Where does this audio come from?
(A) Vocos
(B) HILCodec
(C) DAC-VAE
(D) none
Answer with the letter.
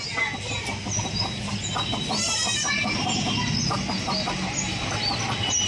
D